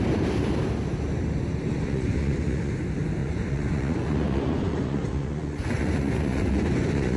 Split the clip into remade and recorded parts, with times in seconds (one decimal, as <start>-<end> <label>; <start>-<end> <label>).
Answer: 0.0-1.7 recorded; 1.7-2.7 remade; 2.7-3.2 recorded; 3.2-7.2 remade